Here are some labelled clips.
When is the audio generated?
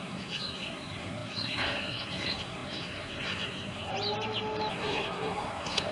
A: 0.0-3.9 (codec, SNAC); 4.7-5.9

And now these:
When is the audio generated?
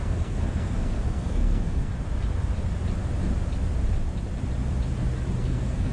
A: 0.0-1.9 (codec, SNAC); 5.4-5.9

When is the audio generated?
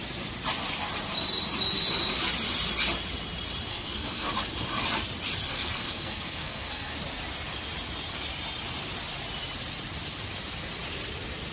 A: 3.7-4.3 (codec, SNAC); 5.5-6.9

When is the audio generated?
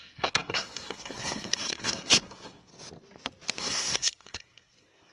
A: 0.0-2.7 (codec, SNAC); 3.6-5.1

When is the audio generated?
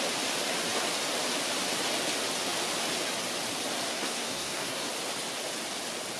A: 3.9-4.9 (codec, SNAC)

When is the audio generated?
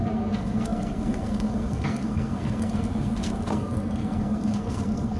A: 0.0-5.2 (codec, SNAC)